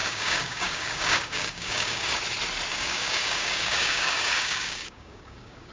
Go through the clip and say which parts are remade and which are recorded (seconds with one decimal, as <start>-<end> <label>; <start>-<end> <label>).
0.0-2.2 remade; 2.2-2.7 recorded; 2.7-5.7 remade